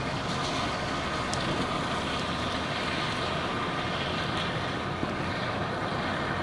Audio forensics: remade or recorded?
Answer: recorded